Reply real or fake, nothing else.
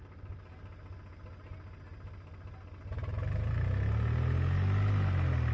real